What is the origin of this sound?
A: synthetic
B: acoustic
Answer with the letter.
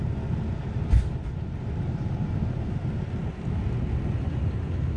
B